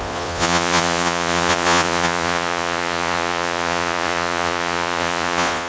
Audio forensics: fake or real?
fake